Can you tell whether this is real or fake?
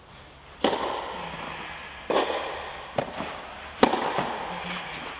real